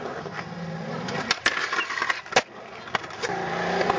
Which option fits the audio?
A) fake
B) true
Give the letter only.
B